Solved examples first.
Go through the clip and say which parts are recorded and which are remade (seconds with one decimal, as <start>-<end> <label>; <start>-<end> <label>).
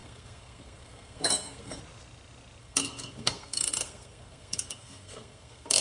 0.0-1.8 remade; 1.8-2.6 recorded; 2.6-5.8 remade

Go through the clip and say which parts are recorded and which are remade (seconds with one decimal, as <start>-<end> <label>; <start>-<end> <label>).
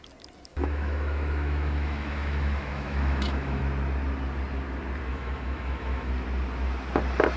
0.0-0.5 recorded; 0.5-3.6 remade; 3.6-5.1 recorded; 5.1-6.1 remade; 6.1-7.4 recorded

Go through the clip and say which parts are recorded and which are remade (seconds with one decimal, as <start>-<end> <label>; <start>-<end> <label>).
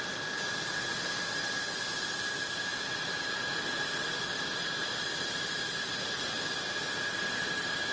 0.0-7.9 recorded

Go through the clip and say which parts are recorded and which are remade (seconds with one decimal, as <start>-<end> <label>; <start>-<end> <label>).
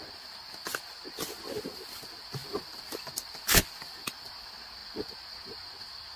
0.0-2.4 recorded; 2.4-4.3 remade; 4.3-6.2 recorded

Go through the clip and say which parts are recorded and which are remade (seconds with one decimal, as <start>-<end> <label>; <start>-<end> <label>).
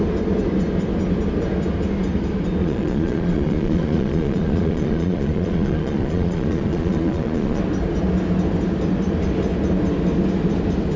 0.0-2.6 recorded; 2.6-7.6 remade; 7.6-11.0 recorded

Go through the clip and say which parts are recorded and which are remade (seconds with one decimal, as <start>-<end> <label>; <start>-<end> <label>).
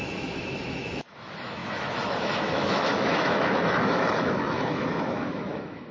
0.0-5.9 remade